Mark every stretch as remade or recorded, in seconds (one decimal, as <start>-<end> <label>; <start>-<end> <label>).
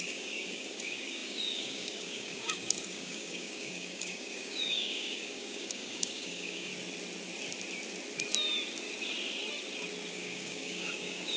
0.0-6.7 remade; 6.7-10.1 recorded; 10.1-11.4 remade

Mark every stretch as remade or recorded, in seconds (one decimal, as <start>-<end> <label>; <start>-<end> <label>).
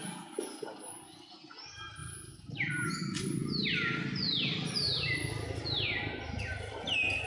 0.0-7.3 recorded